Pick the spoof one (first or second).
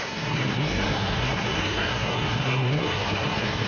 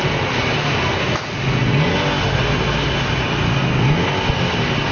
first